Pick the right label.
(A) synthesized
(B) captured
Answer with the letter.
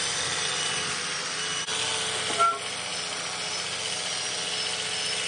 B